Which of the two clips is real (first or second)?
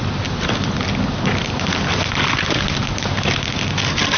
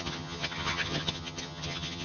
first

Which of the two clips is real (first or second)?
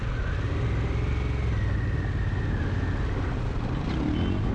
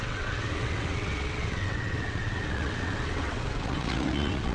first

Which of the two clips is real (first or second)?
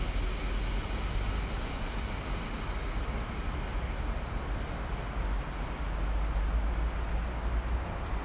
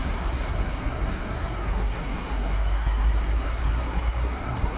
first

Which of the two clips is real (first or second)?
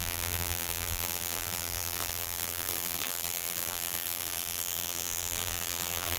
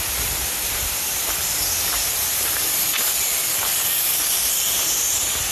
second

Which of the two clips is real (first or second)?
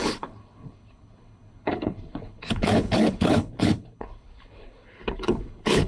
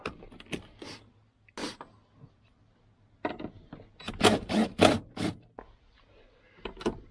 second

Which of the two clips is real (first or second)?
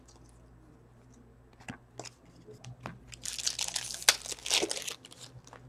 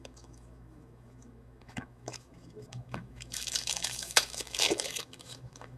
first